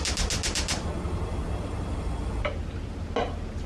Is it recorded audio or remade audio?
recorded